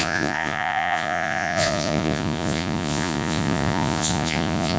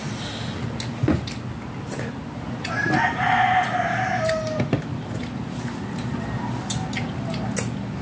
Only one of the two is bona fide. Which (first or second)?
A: second